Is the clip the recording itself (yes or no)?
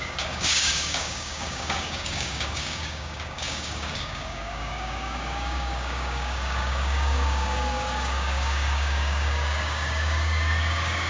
no